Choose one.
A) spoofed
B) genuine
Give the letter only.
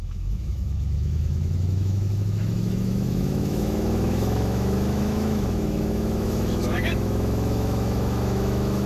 A